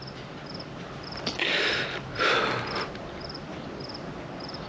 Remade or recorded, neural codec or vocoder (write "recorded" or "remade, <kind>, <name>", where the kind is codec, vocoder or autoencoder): recorded